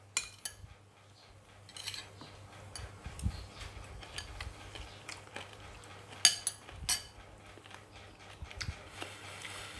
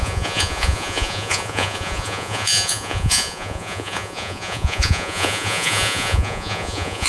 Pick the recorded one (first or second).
first